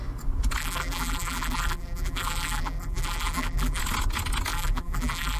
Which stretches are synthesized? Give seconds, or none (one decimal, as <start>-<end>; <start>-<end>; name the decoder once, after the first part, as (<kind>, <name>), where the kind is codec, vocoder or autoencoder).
0.6-3.8 (vocoder, BigVGAN v2); 4.5-5.4